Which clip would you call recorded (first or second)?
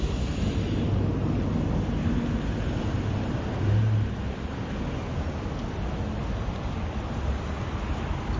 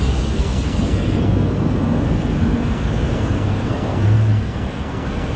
first